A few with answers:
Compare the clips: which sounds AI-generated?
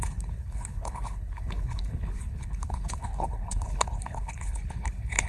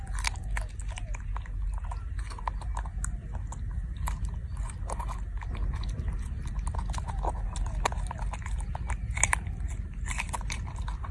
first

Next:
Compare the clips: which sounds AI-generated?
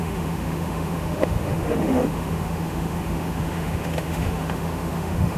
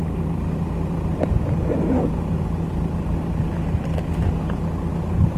first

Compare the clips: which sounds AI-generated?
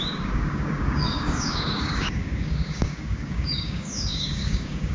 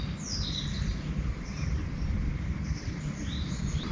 first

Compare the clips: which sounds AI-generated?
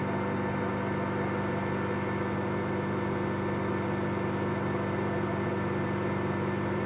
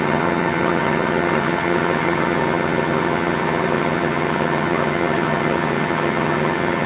second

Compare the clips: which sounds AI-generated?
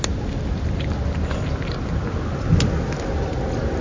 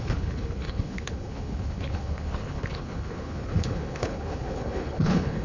second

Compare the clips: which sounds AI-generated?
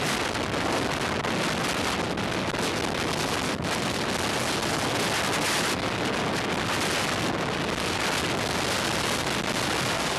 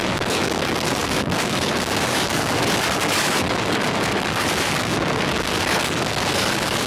second